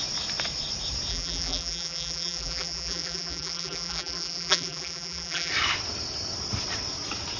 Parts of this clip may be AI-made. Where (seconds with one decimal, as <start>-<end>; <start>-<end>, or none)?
1.1-5.5